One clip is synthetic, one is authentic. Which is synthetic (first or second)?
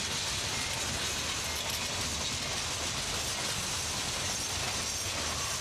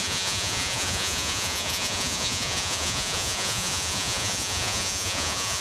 second